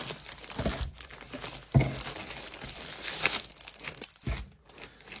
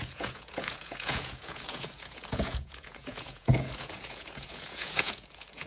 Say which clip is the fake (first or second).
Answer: second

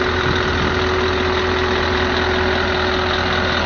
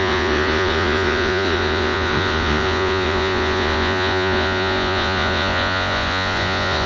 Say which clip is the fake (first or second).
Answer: second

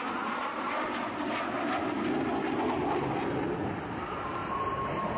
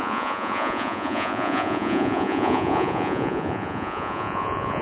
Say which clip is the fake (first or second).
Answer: second